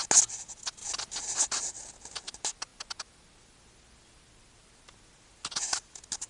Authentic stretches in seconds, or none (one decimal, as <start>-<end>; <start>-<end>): 0.0-6.3